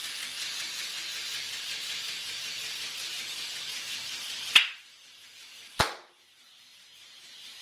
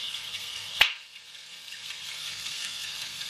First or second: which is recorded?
first